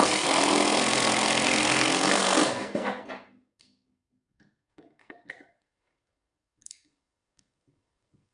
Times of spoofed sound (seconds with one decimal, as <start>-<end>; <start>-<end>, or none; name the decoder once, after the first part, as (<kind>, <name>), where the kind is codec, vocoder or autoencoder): 0.0-8.3 (codec, SNAC)

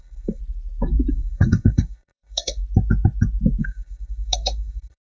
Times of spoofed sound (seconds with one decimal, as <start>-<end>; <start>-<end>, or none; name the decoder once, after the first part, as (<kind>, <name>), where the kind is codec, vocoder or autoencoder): 0.0-0.4 (codec, SNAC); 1.1-2.6; 3.6-5.1

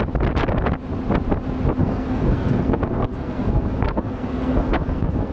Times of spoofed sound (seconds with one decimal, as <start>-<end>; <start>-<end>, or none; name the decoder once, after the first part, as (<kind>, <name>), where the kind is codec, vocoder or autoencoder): 1.8-5.3 (codec, SNAC)

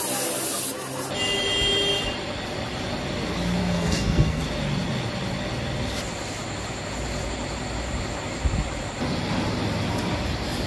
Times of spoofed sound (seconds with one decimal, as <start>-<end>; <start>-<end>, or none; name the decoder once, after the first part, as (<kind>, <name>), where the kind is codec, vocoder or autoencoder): 3.6-4.4 (codec, SNAC)

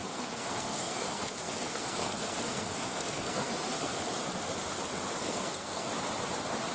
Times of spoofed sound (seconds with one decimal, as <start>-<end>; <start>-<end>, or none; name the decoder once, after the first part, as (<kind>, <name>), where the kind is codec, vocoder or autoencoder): 0.0-4.0 (codec, SNAC); 5.2-5.9